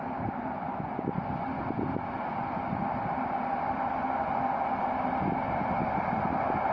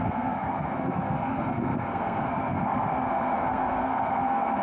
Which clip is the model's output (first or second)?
second